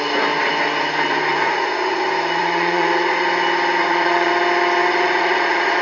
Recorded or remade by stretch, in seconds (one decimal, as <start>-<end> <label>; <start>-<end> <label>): 0.0-1.3 recorded; 1.3-2.0 remade; 2.0-2.4 recorded; 2.4-3.3 remade; 3.3-3.8 recorded; 3.8-4.3 remade; 4.3-4.8 recorded; 4.8-5.8 remade